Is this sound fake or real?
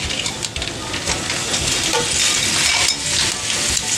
real